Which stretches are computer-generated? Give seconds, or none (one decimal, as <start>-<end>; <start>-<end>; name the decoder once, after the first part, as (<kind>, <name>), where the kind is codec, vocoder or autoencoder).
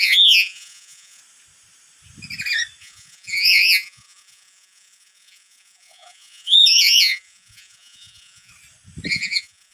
0.0-1.2 (vocoder, Vocos); 2.8-8.5; 9.1-9.7